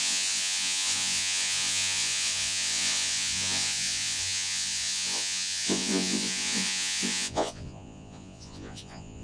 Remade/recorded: remade